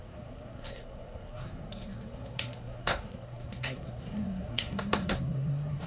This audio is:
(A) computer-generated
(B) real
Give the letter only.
A